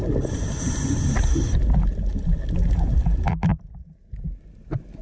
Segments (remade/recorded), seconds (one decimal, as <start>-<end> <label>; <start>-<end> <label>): 0.0-5.0 recorded